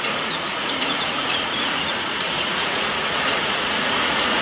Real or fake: fake